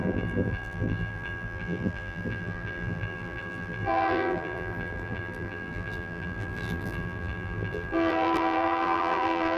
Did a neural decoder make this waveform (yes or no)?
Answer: yes